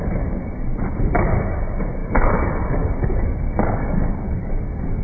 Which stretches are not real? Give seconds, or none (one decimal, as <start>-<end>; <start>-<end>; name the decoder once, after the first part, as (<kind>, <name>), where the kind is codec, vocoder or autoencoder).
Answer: 0.0-0.7 (codec, DAC); 1.3-5.0